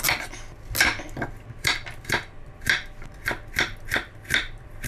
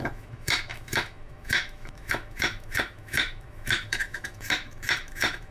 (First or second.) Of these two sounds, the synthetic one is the second